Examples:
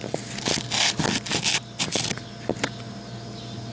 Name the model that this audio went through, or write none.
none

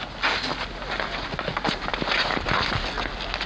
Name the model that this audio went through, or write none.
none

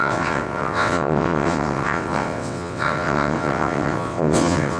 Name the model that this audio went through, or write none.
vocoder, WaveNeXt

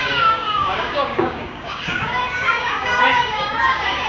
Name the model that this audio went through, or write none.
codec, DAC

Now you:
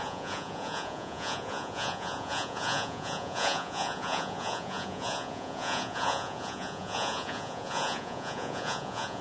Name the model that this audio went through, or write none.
vocoder, Vocos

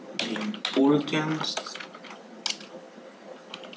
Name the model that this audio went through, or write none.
none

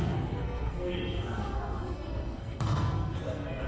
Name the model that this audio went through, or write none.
codec, SNAC